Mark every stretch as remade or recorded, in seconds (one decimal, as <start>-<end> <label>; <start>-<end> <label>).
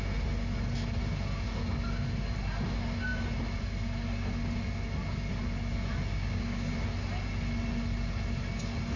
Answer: 0.0-6.1 recorded; 6.1-6.7 remade; 6.7-9.0 recorded